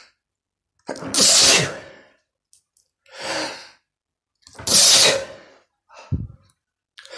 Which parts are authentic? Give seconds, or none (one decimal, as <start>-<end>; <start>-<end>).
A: 0.0-7.2